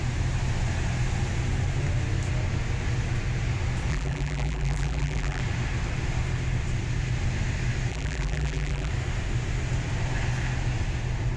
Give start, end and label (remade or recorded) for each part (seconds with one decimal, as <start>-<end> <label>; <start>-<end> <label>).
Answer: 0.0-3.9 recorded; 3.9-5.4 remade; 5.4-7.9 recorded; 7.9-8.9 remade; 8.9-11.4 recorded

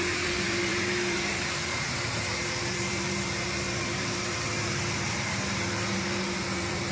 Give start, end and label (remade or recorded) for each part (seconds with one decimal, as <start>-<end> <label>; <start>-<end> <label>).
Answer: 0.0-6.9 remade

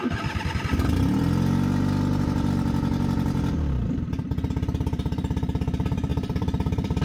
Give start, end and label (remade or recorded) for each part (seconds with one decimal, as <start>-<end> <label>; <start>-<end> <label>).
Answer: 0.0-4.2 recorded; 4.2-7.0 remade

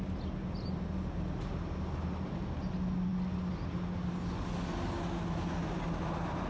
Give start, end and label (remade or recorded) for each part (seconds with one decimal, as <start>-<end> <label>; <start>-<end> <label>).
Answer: 0.0-6.5 recorded

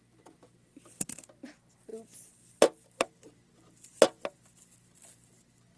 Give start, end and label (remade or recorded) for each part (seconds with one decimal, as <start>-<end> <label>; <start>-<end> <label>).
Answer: 0.0-5.8 recorded